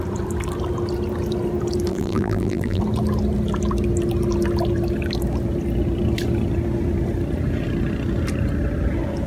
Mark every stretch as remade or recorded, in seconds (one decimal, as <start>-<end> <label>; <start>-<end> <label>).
0.0-1.9 recorded; 1.9-2.8 remade; 2.8-9.3 recorded

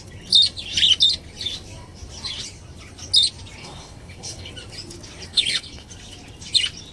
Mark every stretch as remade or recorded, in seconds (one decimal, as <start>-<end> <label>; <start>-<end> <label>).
0.0-3.6 recorded; 3.6-4.5 remade; 4.5-5.3 recorded; 5.3-5.9 remade; 5.9-6.9 recorded